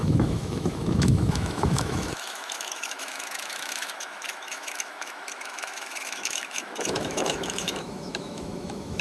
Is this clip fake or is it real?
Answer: fake